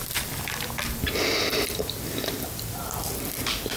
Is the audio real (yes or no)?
yes